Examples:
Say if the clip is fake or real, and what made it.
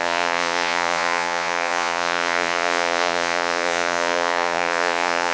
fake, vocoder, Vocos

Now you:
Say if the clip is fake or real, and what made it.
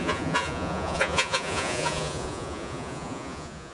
fake, vocoder, Vocos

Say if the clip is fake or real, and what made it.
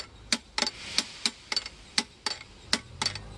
real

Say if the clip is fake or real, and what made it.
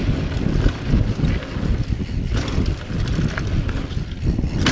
real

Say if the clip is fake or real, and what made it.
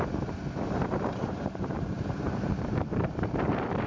fake, vocoder, BigVGAN v2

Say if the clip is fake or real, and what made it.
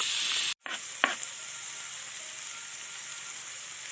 real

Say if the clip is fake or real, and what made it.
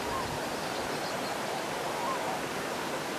real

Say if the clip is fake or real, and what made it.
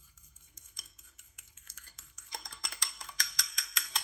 fake, codec, SNAC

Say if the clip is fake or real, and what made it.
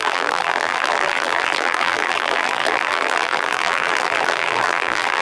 fake, vocoder, BigVGAN v2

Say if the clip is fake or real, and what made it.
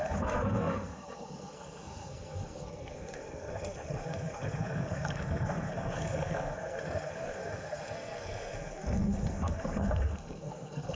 fake, codec, SNAC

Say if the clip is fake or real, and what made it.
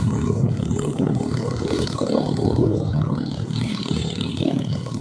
fake, codec, SNAC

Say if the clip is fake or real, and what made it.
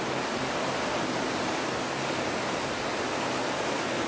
real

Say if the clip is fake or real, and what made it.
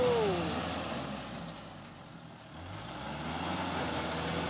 real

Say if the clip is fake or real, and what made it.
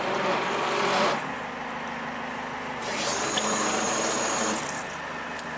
real